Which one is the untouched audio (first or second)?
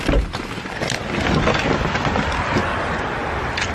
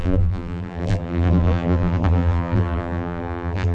first